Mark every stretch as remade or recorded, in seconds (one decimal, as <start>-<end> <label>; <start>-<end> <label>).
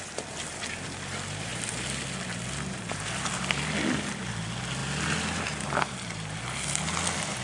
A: 0.0-7.4 recorded